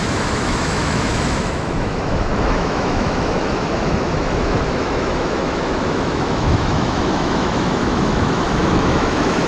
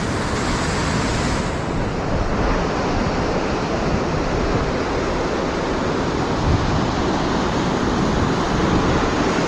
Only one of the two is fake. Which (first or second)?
first